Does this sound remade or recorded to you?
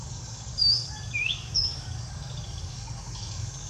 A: remade